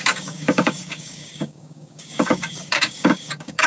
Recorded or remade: remade